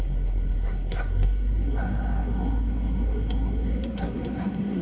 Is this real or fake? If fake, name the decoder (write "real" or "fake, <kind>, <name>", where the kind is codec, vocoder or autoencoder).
fake, codec, SNAC